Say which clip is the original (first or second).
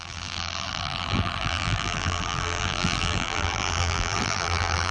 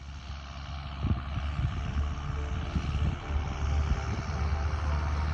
second